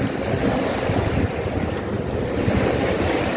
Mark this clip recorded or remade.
recorded